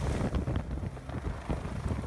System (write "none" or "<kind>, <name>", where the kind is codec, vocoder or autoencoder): none